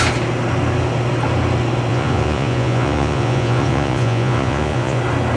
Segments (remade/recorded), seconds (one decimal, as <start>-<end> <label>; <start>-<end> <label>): 0.0-1.9 recorded; 1.9-5.0 remade; 5.0-5.4 recorded